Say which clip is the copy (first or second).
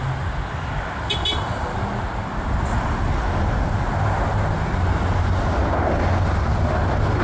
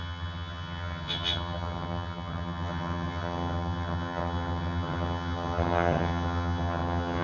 second